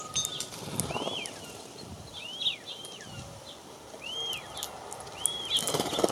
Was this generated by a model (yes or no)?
no